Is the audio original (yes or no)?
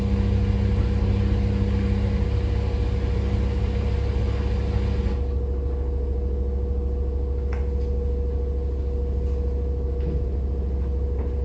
yes